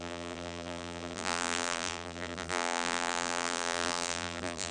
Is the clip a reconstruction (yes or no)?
yes